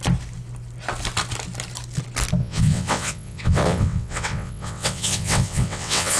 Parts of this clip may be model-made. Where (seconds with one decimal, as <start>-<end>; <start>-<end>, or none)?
2.4-6.2